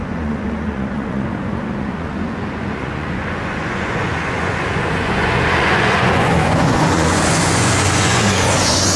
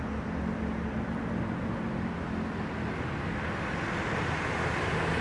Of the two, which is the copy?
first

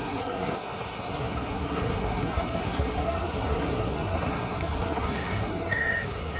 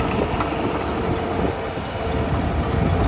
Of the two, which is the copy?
first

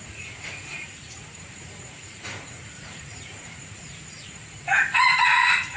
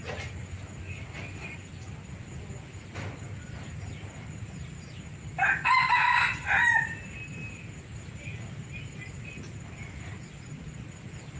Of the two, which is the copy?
first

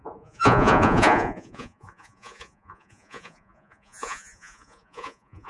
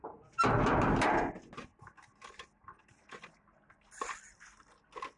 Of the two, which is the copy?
first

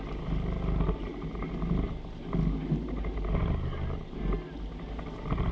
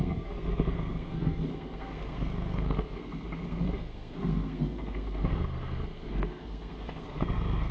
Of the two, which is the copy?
second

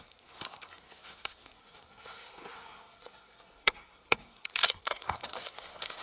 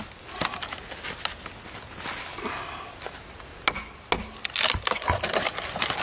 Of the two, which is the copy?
first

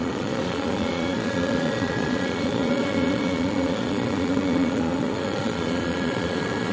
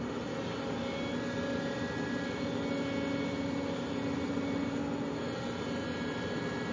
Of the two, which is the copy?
first